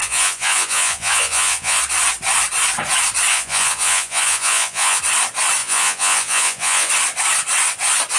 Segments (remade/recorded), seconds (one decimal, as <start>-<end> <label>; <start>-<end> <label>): 0.0-1.8 remade; 1.8-3.3 recorded; 3.3-5.0 remade; 5.0-5.6 recorded; 5.6-6.9 remade; 6.9-8.2 recorded